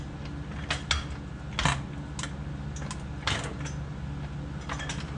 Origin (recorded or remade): recorded